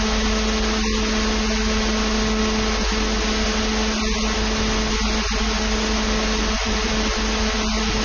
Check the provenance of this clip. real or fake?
real